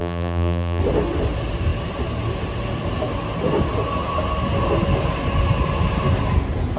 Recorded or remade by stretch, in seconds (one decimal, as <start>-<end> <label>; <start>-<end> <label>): 0.0-0.8 remade; 0.8-6.8 recorded